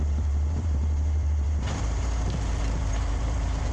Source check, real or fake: fake